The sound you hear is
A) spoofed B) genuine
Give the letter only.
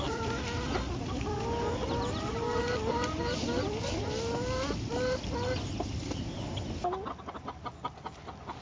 B